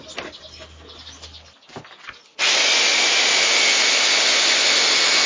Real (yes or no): yes